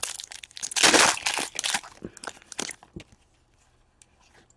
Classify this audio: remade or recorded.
recorded